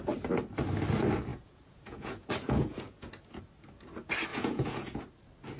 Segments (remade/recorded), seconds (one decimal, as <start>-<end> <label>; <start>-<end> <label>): 0.0-1.3 recorded; 1.3-3.1 remade; 3.1-4.3 recorded; 4.3-5.0 remade; 5.0-5.6 recorded